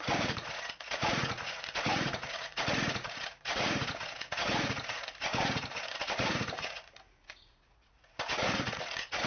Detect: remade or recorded remade